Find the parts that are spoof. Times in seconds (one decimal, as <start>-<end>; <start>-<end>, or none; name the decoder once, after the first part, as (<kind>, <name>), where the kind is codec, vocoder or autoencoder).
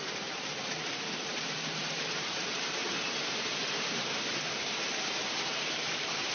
0.0-6.3 (vocoder, BigVGAN v2)